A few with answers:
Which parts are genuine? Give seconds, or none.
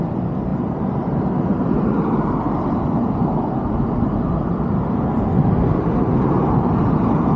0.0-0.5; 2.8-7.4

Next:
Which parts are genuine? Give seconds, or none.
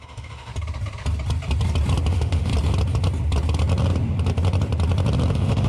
0.5-2.1; 2.5-5.3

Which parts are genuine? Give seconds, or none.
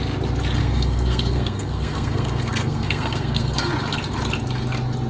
0.0-0.6; 3.7-5.1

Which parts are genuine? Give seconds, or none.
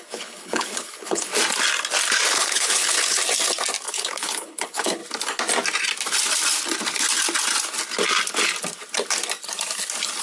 1.3-2.3; 3.2-3.9; 5.0-10.2